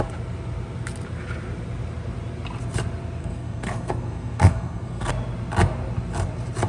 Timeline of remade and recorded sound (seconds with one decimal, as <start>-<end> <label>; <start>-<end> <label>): 0.0-3.2 recorded; 3.2-5.1 remade; 5.1-6.7 recorded